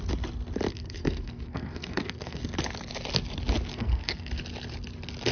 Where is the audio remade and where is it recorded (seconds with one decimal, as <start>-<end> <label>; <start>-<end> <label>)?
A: 0.0-0.7 recorded; 0.7-2.4 remade; 2.4-3.7 recorded; 3.7-4.3 remade; 4.3-5.3 recorded